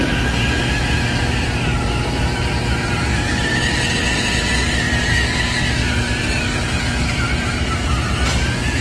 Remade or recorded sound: recorded